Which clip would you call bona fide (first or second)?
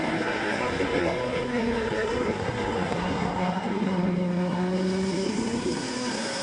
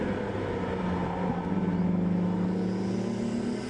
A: second